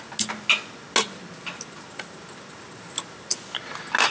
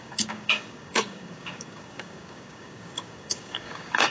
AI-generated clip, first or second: second